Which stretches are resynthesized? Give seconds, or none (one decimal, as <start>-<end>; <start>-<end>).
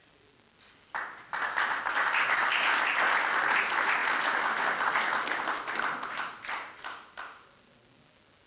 none